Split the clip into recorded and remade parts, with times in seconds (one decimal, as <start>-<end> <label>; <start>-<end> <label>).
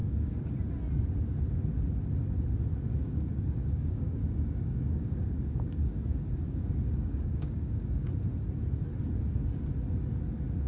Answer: 0.0-0.5 remade; 0.5-2.9 recorded; 2.9-8.1 remade; 8.1-10.7 recorded